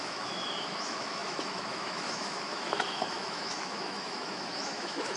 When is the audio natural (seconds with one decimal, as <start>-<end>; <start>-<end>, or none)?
none